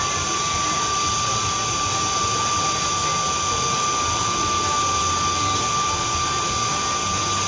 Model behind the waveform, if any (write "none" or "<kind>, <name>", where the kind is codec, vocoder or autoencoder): none